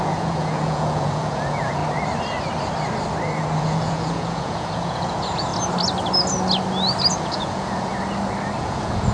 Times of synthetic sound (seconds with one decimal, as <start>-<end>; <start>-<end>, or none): 0.0-1.8; 3.6-5.5; 7.1-7.9; 8.6-9.1